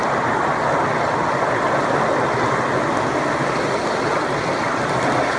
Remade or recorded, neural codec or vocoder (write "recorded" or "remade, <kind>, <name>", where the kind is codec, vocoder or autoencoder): recorded